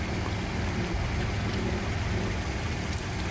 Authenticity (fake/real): real